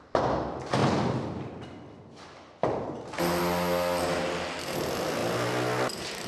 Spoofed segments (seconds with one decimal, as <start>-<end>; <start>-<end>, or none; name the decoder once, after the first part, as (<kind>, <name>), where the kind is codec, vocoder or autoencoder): none